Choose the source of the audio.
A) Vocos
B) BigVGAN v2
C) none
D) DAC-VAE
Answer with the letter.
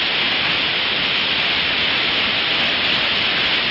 C